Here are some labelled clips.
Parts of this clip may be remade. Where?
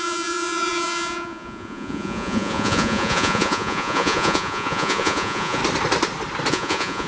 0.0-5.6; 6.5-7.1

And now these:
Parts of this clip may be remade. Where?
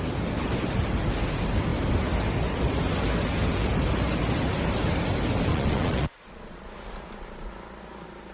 5.5-6.6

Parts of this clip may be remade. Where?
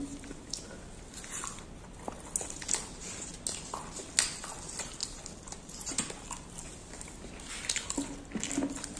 none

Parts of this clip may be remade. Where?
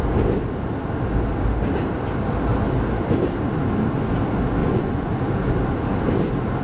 4.6-5.1